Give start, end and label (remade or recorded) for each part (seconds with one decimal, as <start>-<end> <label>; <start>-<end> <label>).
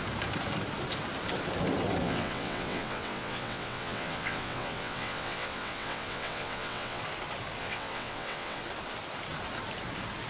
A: 0.0-2.0 recorded; 2.0-7.0 remade; 7.0-7.6 recorded; 7.6-8.6 remade; 8.6-10.3 recorded